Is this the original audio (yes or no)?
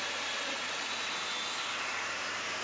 yes